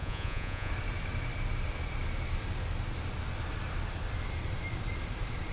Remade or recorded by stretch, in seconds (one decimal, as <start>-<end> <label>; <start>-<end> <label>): 0.0-0.7 remade; 0.7-5.5 recorded